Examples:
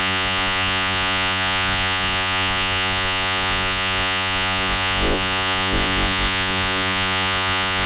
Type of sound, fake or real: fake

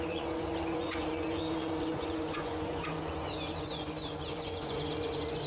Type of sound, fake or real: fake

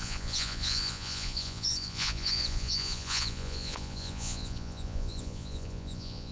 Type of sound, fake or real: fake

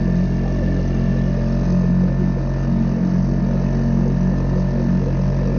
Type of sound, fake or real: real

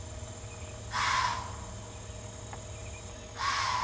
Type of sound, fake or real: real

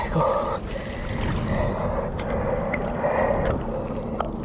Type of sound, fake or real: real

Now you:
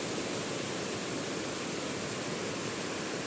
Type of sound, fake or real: real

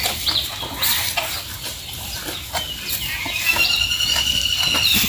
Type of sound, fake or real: real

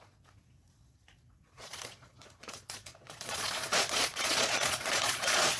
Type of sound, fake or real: fake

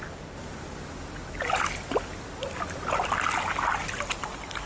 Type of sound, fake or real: real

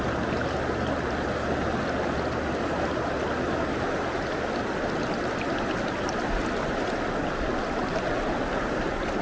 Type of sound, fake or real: real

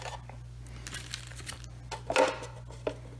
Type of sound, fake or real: real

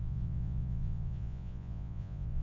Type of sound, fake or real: fake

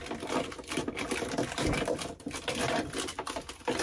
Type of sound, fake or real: real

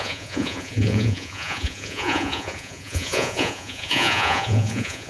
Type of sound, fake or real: fake